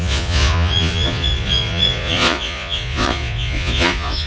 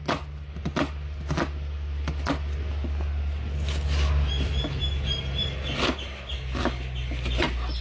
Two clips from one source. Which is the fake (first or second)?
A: first